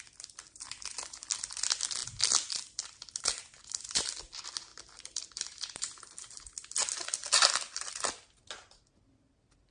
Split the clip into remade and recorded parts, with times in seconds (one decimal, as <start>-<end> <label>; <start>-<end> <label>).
0.0-4.7 recorded; 4.7-5.6 remade; 5.6-6.8 recorded; 6.8-7.9 remade; 7.9-9.7 recorded